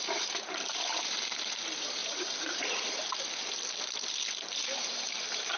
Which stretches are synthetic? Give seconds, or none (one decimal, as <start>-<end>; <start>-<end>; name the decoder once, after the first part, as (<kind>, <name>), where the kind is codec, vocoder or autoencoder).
0.0-3.0 (vocoder, BigVGAN v2); 4.4-5.6